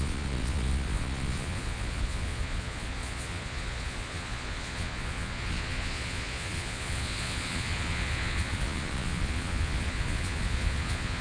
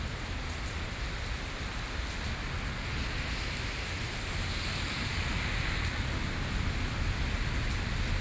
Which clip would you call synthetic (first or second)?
first